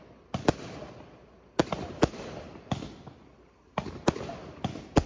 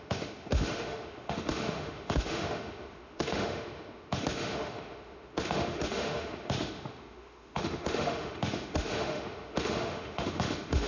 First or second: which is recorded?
first